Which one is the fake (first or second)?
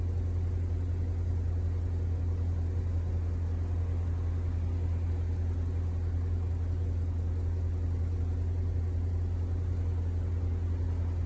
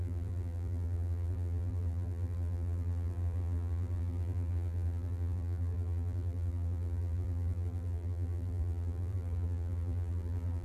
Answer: second